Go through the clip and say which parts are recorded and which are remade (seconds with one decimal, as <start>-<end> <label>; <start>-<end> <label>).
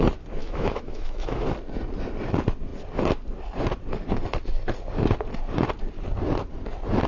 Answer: 0.0-0.4 recorded; 0.4-1.5 remade; 1.5-7.1 recorded